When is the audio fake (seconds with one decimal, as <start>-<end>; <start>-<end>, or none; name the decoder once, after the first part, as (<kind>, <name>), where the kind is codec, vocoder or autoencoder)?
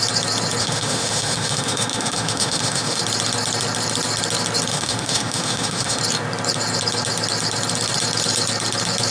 0.6-3.0 (autoencoder, DAC-VAE); 4.7-6.0